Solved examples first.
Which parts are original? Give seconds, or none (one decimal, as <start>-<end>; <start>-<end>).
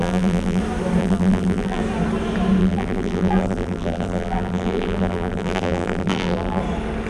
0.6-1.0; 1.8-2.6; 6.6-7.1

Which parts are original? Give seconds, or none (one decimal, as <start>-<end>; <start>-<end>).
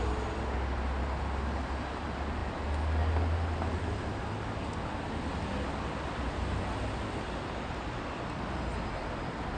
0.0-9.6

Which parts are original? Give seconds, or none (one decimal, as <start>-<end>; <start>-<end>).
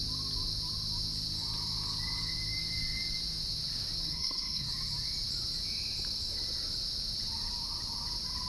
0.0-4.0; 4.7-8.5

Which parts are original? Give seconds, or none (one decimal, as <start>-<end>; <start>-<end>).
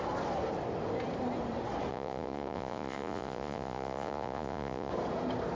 0.0-1.9; 4.9-5.5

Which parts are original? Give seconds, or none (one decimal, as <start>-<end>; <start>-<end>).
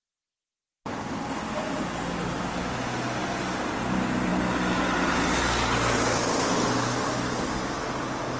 0.0-8.4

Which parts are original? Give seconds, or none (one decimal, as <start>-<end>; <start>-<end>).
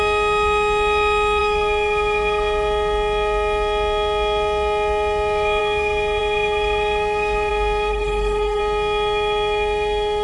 0.0-7.9; 8.6-10.2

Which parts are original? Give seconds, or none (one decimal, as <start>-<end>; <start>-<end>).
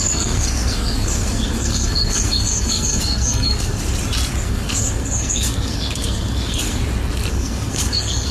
3.7-4.3; 6.8-7.3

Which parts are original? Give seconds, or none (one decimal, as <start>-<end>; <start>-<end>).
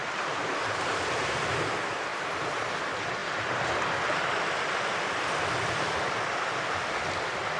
1.0-2.1; 2.6-7.6